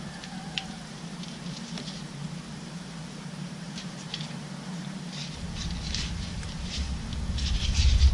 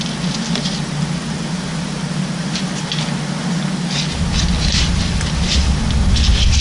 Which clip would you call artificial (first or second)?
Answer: first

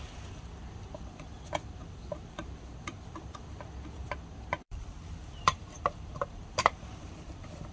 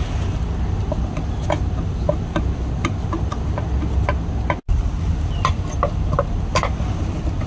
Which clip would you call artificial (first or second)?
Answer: first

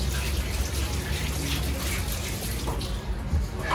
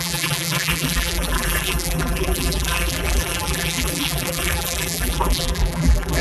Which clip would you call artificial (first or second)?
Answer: second